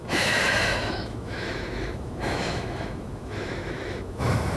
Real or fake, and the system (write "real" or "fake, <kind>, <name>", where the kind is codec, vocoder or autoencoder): fake, autoencoder, DAC-VAE